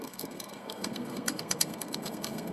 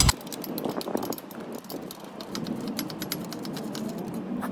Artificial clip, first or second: first